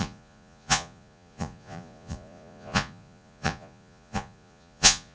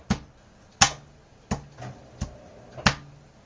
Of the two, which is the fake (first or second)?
first